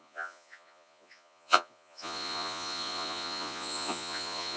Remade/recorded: remade